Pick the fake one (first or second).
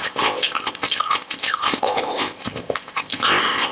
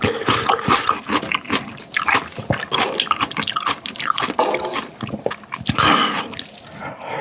first